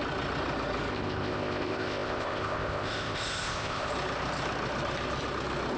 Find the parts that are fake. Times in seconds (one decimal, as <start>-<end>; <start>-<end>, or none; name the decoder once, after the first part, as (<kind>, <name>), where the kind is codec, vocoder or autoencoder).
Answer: 0.9-3.9 (codec, ZipCodec)